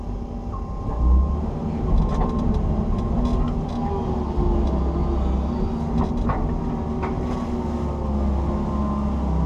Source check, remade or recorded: recorded